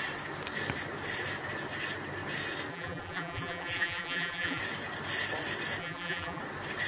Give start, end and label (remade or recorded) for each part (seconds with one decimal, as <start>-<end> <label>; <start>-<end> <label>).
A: 0.0-2.7 recorded; 2.7-4.6 remade; 4.6-5.8 recorded; 5.8-6.4 remade; 6.4-6.9 recorded